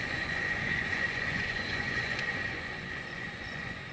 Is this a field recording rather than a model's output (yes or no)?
no